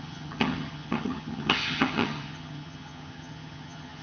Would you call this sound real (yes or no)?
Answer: no